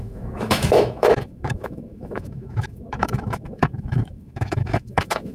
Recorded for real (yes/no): no